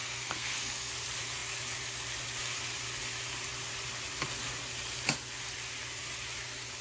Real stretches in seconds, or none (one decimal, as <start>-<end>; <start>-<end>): 0.9-6.8